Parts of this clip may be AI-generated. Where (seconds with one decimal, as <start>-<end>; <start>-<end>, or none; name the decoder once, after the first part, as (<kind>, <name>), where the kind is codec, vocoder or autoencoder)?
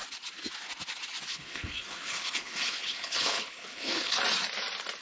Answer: 1.3-4.2 (codec, HILCodec)